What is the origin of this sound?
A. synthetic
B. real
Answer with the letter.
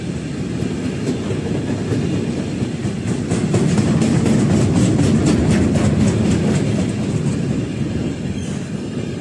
B